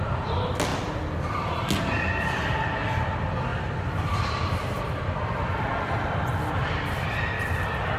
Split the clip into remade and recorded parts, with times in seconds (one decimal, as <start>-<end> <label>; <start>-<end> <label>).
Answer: 0.0-8.0 recorded